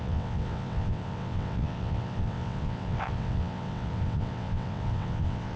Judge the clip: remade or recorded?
remade